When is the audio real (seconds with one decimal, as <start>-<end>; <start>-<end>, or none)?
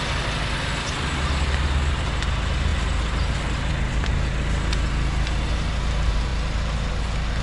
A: 0.0-7.4